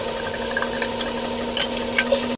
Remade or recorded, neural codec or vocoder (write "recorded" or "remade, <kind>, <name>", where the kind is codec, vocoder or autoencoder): recorded